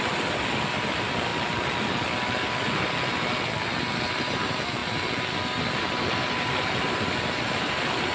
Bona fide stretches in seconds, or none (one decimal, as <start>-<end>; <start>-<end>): 1.3-4.1; 4.8-5.8